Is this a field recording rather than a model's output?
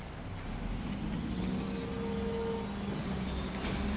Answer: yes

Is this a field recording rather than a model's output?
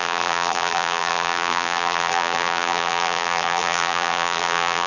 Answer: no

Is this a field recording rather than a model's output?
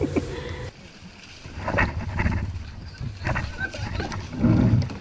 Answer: yes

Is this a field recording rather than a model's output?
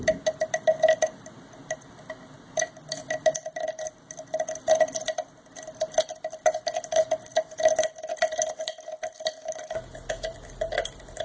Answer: yes